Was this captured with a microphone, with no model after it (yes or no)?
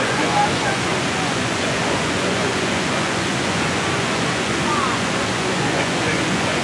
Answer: no